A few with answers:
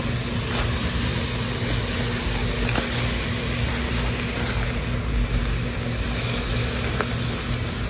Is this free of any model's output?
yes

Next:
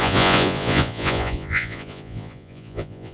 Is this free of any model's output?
no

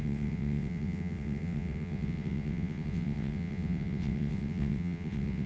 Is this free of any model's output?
no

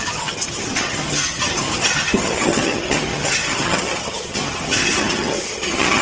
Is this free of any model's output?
no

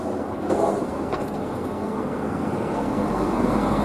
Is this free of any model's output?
no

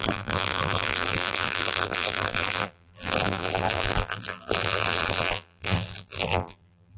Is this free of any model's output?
no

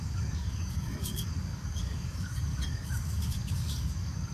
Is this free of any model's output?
no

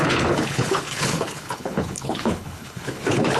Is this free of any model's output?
no